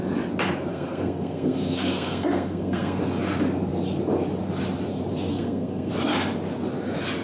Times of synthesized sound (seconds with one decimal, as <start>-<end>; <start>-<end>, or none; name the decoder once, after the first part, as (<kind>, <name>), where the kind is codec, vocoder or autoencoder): 0.7-3.0 (codec, SNAC); 5.3-5.9